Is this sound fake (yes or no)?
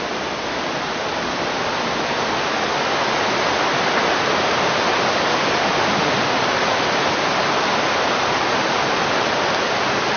no